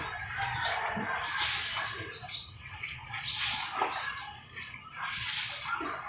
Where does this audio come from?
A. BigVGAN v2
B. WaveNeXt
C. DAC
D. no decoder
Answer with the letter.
D